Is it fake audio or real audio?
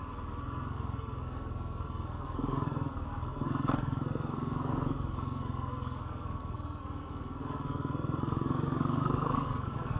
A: fake